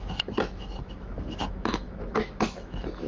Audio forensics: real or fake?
fake